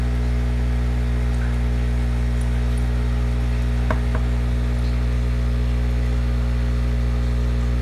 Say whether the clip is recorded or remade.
recorded